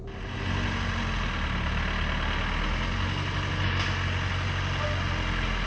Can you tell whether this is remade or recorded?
recorded